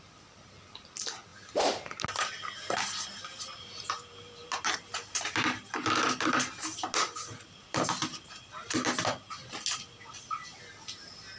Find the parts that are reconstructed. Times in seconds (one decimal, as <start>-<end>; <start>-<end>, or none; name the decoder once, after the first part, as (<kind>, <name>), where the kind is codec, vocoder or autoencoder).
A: none